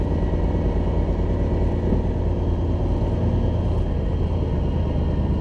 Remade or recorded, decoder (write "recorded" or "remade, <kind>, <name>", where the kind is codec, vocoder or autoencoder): recorded